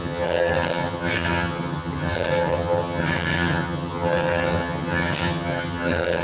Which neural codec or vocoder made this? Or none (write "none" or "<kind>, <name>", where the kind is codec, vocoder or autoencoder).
vocoder, HiFi-GAN